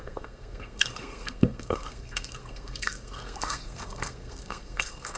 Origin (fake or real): fake